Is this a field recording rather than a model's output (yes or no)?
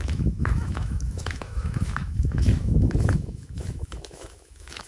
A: no